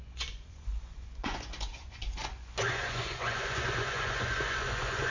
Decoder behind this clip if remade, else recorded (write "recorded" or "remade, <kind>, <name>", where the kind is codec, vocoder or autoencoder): remade, vocoder, Vocos